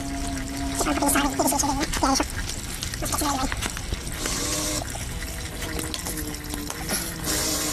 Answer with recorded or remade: recorded